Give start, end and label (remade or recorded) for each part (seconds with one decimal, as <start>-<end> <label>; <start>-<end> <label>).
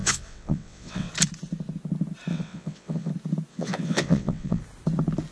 0.0-1.1 remade; 1.1-2.3 recorded; 2.3-3.1 remade; 3.1-3.5 recorded; 3.5-4.6 remade; 4.6-5.3 recorded